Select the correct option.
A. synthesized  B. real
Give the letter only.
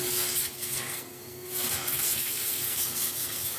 A